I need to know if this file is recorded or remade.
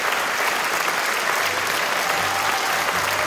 recorded